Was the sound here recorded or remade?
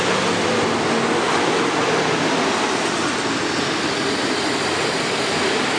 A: remade